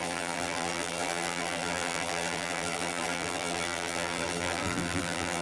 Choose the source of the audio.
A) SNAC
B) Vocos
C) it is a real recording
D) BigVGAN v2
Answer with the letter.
D